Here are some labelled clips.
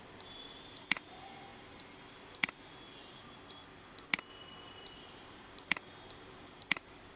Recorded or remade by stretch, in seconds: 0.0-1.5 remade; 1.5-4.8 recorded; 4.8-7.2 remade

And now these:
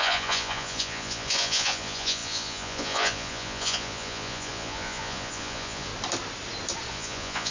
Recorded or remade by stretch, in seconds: 0.0-5.9 remade; 5.9-6.9 recorded; 6.9-7.5 remade

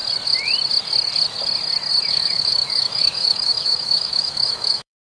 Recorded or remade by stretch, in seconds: 0.0-2.0 recorded; 2.0-5.0 remade